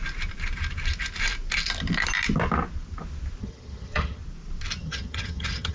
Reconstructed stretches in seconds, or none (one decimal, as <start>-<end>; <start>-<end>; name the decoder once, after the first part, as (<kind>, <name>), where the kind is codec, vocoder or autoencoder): 3.4-4.2 (vocoder, HiFi-GAN); 4.8-5.7